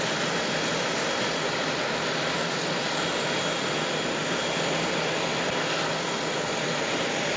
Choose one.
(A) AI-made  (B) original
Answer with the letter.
B